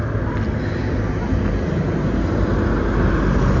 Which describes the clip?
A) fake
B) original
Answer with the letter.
B